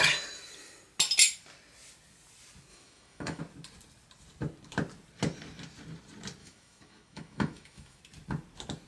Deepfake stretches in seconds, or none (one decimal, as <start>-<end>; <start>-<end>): 2.7-3.4; 6.4-8.0